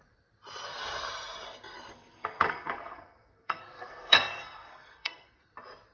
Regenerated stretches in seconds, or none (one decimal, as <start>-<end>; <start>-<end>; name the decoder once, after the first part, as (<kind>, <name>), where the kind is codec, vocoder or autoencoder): 1.9-5.4 (codec, SNAC)